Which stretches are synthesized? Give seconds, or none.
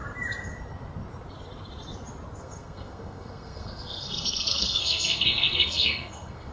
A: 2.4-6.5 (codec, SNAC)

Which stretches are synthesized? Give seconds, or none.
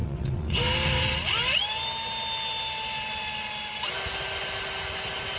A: 0.0-0.6 (vocoder, WaveNeXt)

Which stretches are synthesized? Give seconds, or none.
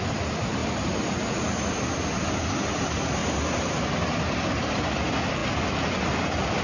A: none